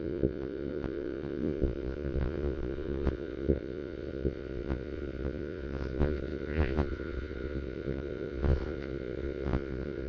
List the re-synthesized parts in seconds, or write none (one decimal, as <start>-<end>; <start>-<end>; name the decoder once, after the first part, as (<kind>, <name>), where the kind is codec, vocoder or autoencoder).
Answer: 0.0-10.1 (vocoder, Vocos)